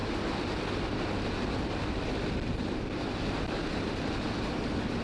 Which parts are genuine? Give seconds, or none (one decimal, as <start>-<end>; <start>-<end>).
0.0-5.0